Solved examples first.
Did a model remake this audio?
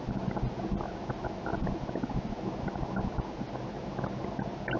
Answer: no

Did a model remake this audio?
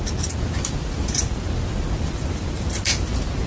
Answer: no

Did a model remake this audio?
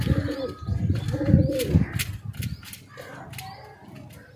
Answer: no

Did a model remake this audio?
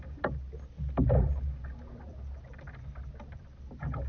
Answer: no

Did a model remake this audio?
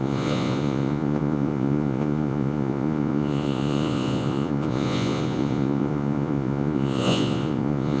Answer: yes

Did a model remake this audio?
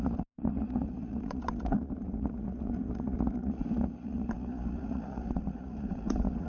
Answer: yes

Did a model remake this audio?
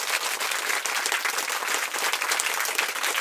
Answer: no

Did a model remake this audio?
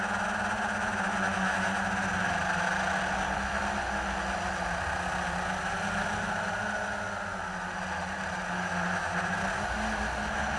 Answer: no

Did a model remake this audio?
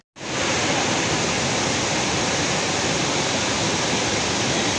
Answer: no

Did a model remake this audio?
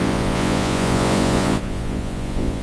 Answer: yes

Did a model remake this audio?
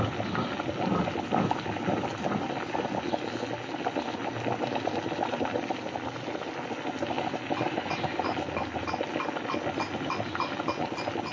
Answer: no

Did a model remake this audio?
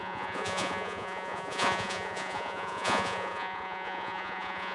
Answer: yes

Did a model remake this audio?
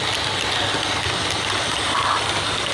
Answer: no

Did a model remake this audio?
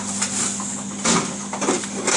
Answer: no